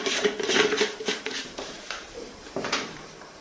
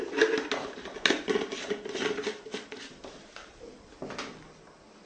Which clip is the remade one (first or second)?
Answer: first